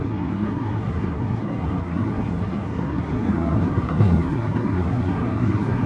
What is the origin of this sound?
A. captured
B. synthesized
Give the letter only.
B